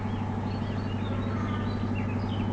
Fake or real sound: real